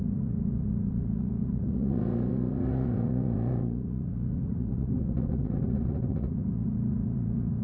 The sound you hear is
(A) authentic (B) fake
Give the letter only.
B